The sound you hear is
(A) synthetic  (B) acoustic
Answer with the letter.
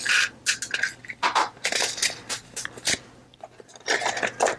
B